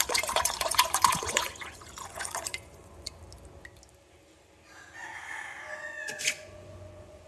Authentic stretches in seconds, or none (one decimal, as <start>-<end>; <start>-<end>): 3.2-5.8